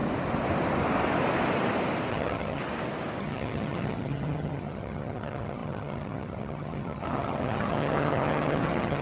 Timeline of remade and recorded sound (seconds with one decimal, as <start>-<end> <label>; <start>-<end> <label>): 0.0-2.1 recorded; 2.1-2.6 remade; 2.6-3.2 recorded; 3.2-9.0 remade